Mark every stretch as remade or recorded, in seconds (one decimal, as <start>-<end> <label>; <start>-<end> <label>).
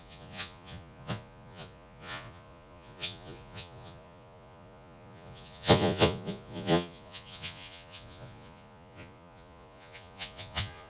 0.0-10.9 remade